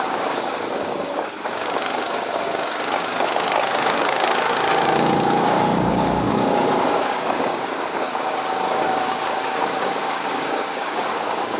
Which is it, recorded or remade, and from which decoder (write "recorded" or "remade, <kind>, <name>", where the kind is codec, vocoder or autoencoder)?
remade, codec, DAC